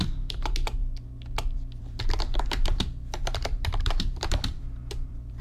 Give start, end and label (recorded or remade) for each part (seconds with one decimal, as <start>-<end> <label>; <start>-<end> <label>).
0.0-0.8 remade; 0.8-1.8 recorded; 1.8-5.4 remade